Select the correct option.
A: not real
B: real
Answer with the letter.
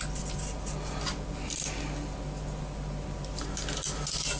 B